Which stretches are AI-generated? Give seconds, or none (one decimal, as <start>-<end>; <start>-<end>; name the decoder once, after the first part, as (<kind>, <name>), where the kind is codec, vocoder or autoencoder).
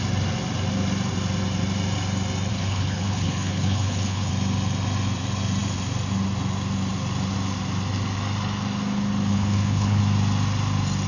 2.5-4.3 (codec, HILCodec); 9.3-10.0